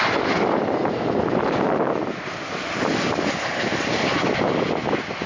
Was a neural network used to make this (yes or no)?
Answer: no